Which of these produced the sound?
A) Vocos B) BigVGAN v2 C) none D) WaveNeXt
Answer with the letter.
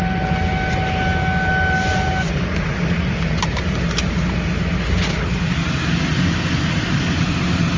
C